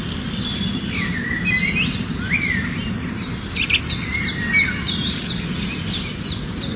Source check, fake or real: real